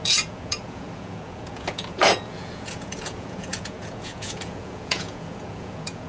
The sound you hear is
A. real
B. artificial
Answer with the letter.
B